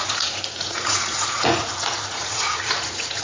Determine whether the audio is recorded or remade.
remade